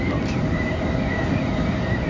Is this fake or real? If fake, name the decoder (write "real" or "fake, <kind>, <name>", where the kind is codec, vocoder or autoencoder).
real